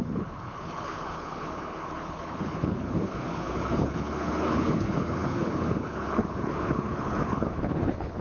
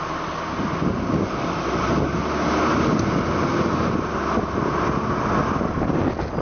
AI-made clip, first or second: first